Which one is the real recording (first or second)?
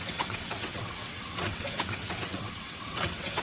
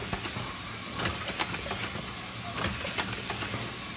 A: second